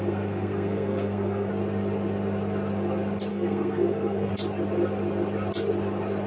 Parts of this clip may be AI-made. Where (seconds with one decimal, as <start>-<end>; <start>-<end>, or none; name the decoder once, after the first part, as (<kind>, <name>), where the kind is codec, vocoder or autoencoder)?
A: 0.0-1.5 (codec, SNAC); 3.3-4.3